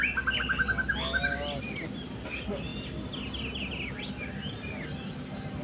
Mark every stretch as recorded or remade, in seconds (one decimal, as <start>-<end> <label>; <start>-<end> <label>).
0.0-5.6 recorded